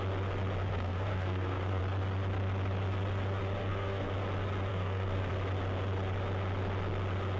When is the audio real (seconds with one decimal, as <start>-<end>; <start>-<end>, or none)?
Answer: 0.0-0.7; 1.8-3.6; 4.1-4.7; 5.3-7.4